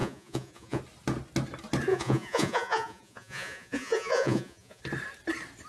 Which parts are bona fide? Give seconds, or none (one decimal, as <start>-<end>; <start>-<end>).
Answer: 0.8-1.9; 4.8-5.7